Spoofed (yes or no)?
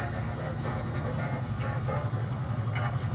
yes